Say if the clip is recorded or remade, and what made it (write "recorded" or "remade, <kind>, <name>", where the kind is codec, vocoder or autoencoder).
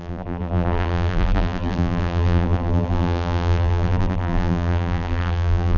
remade, vocoder, BigVGAN v2